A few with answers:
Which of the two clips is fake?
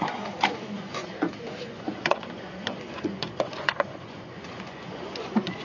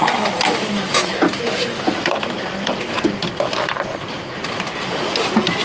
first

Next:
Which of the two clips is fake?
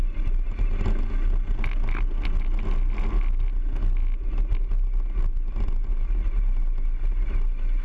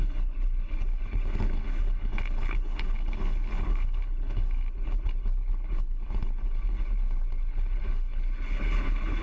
second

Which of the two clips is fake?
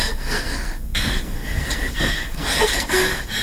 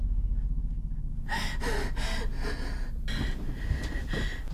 first